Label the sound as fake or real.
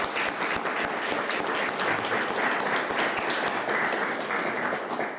real